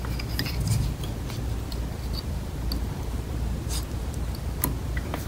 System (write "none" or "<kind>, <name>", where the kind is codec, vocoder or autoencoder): none